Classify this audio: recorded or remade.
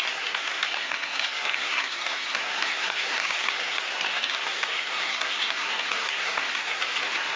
remade